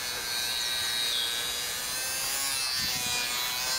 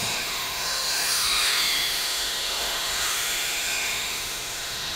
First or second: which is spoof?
second